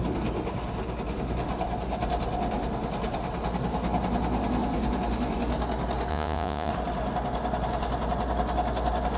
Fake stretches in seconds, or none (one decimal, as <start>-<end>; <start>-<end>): 6.1-6.7